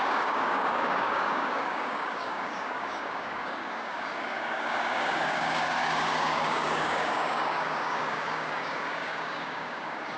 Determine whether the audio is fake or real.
fake